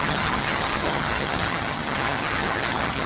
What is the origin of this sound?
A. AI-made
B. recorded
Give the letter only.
A